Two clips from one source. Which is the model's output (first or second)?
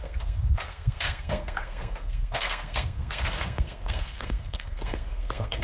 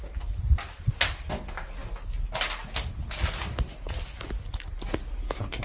first